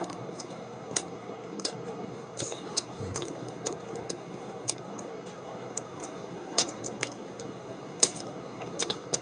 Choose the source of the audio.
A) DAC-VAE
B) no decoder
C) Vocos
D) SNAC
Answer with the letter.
D